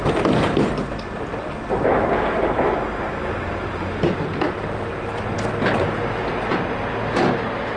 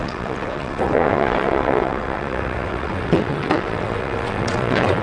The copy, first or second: second